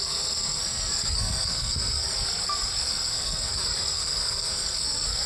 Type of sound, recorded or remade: remade